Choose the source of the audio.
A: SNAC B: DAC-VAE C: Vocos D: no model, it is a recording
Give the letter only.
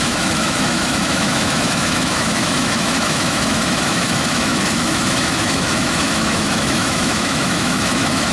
B